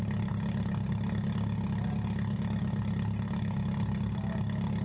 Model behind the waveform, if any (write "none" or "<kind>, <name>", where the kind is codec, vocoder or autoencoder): none